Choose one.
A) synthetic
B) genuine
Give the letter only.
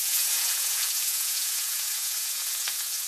A